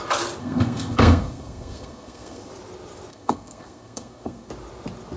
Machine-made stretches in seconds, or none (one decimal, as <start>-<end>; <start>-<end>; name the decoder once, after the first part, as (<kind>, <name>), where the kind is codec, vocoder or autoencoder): 0.4-2.5 (codec, SNAC); 3.1-4.5